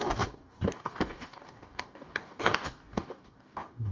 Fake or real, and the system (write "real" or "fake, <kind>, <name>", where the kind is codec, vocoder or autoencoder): fake, codec, DAC